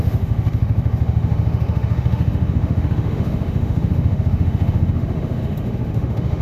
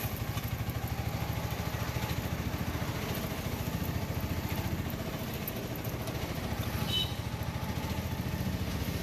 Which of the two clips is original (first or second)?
second